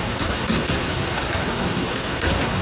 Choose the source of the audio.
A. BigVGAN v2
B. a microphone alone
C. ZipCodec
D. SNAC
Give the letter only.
D